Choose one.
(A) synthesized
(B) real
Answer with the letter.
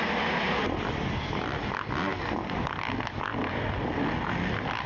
B